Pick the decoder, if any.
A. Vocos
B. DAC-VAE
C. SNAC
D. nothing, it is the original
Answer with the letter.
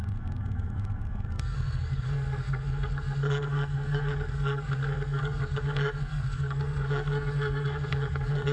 C